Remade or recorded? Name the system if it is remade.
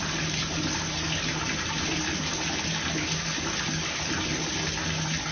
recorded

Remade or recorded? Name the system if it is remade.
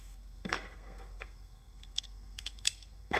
remade, codec, SNAC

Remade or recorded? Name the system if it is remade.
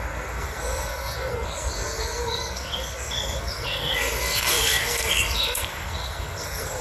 remade, codec, SNAC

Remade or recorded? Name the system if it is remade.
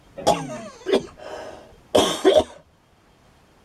recorded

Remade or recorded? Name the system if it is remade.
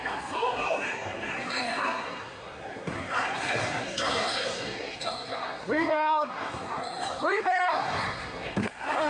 remade, codec, SNAC